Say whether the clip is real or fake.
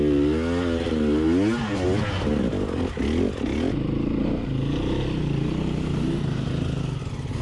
real